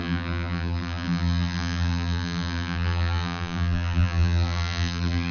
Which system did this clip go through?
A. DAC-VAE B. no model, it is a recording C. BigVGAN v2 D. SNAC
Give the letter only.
C